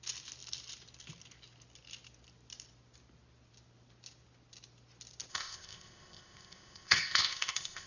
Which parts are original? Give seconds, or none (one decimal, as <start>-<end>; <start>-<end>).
0.0-5.3